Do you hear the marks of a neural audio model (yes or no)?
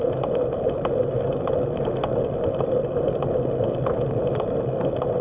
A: no